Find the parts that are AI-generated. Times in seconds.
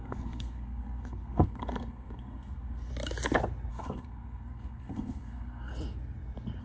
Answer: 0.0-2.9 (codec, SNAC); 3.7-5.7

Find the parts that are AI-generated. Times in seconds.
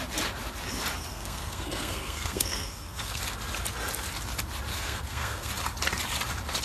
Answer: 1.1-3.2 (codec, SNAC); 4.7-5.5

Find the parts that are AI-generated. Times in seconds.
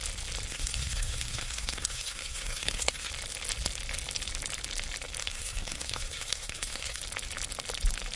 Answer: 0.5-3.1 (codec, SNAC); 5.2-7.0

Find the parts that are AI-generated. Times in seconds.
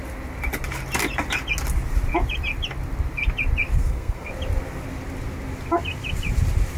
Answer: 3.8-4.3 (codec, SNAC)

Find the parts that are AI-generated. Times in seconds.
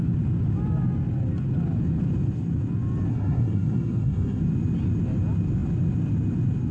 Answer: 3.1-4.4 (codec, SNAC)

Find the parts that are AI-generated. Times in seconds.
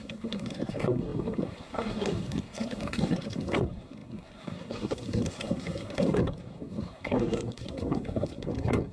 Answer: 0.0-8.9 (codec, SNAC)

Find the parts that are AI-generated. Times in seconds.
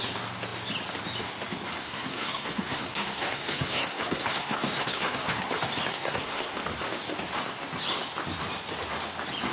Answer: 1.8-5.5 (codec, SNAC); 5.9-6.6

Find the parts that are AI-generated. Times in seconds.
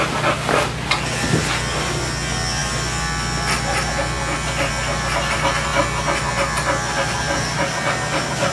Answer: none